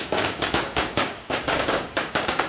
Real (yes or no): no